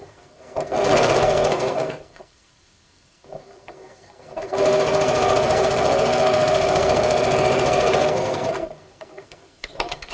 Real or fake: fake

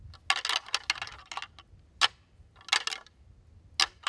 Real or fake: real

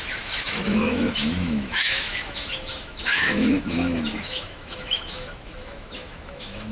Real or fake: fake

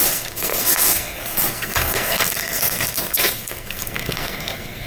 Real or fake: fake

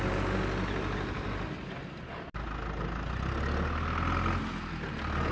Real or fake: real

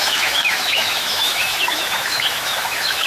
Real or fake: fake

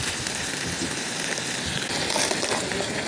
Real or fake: real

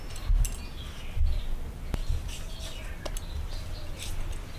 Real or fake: real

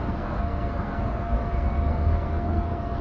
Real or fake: fake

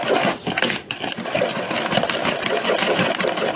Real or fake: real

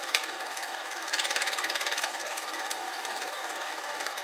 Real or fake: fake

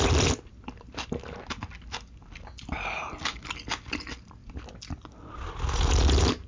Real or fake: real